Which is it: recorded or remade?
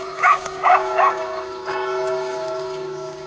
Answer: remade